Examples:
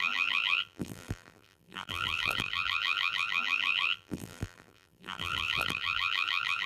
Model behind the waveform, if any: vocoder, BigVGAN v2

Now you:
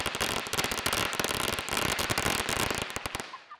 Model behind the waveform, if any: none